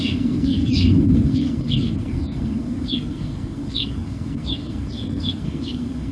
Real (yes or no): no